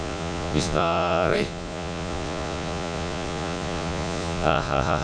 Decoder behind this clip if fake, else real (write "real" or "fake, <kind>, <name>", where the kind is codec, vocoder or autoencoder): fake, vocoder, Vocos